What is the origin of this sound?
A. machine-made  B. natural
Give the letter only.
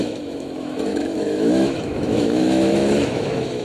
A